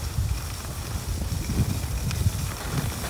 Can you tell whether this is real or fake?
real